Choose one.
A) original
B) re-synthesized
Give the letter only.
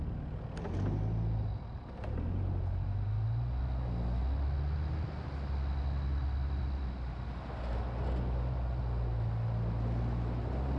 A